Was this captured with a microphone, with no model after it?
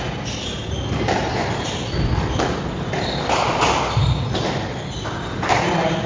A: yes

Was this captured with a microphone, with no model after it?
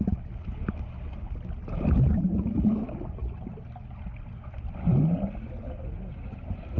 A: yes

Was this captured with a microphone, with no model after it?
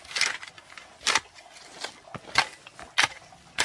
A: yes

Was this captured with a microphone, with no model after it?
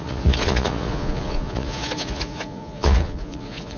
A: no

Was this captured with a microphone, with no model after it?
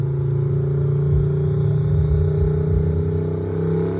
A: yes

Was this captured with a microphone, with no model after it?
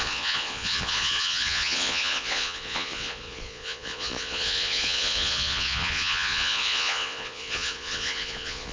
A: no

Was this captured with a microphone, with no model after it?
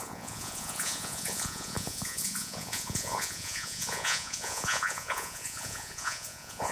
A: no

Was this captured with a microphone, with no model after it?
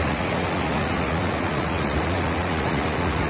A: no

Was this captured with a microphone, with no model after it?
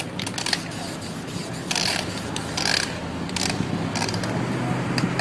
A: yes